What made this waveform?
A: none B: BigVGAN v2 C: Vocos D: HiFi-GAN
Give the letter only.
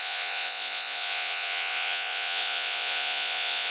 C